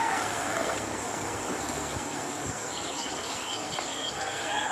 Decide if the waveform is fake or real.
fake